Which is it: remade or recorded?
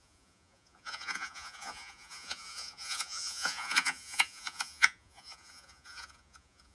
remade